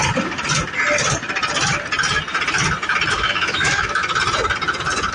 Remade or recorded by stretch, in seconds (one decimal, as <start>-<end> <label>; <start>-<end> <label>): 0.0-3.1 recorded; 3.1-4.0 remade; 4.0-5.1 recorded